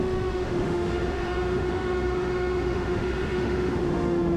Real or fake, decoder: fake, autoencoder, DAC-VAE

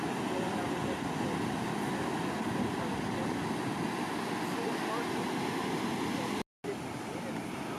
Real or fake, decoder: real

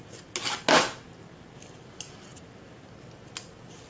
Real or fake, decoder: real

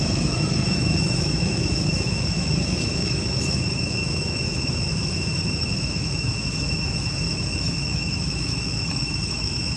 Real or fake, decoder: fake, autoencoder, DAC-VAE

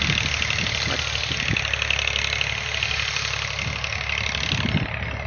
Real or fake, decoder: real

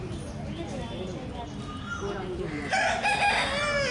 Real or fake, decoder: real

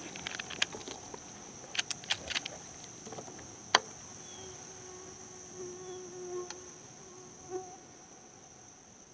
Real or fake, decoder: real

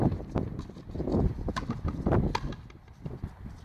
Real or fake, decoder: real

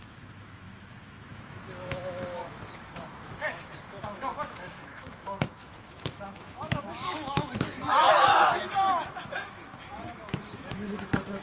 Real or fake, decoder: fake, autoencoder, DAC-VAE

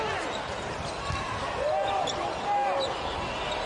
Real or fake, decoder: real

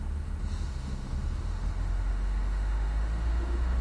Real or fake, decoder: fake, autoencoder, DAC-VAE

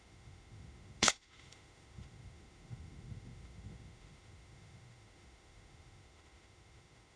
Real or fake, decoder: fake, autoencoder, DAC-VAE